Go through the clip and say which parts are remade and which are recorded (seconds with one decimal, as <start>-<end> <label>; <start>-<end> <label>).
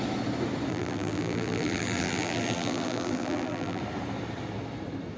0.0-0.7 recorded; 0.7-3.8 remade; 3.8-5.2 recorded